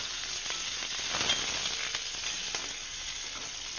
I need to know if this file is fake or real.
real